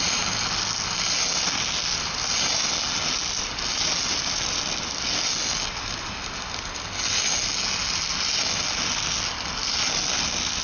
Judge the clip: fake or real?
real